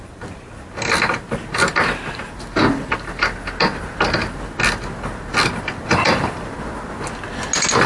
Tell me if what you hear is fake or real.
real